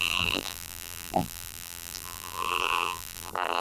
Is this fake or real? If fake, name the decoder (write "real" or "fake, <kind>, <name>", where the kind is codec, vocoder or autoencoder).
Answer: fake, vocoder, BigVGAN v2